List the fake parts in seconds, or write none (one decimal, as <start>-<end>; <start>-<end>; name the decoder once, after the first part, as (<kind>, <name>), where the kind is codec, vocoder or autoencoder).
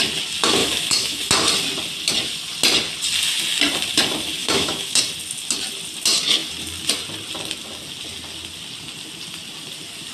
0.6-1.2 (autoencoder, DAC-VAE); 4.4-5.0